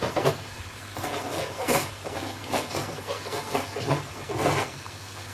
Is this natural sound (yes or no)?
no